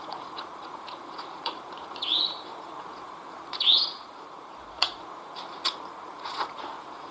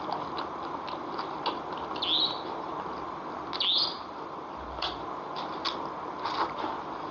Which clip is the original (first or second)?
second